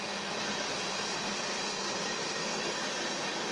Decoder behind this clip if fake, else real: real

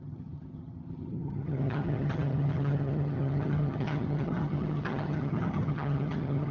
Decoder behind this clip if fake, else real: fake, vocoder, HiFi-GAN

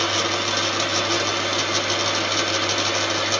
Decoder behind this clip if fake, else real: real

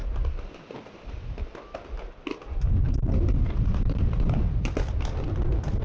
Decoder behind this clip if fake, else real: real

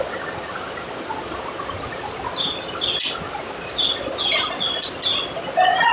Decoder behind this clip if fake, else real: real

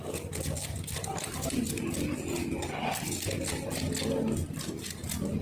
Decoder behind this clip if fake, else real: real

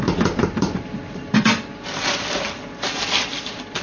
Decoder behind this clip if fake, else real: fake, vocoder, BigVGAN v2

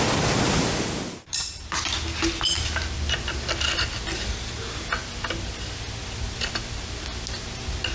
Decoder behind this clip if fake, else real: real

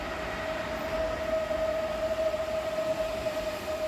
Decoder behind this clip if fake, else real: real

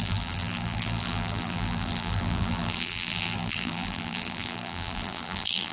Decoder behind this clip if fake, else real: fake, vocoder, BigVGAN v2